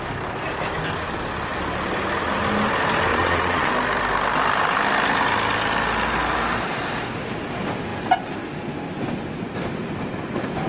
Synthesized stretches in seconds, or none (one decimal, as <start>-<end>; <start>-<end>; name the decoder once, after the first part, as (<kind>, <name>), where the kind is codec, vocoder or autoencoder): 3.1-3.7 (vocoder, Vocos)